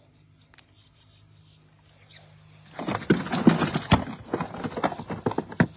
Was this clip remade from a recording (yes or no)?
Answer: no